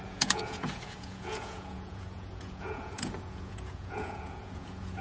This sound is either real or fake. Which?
fake